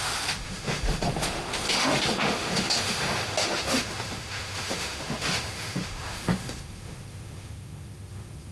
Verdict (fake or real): fake